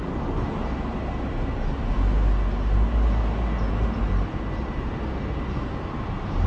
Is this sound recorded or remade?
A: recorded